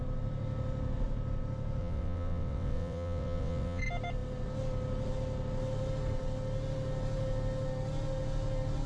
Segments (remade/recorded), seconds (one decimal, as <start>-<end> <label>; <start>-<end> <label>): 0.0-1.8 recorded; 1.8-3.8 remade; 3.8-8.9 recorded